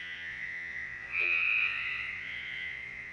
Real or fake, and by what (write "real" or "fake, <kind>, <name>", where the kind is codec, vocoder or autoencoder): fake, vocoder, Vocos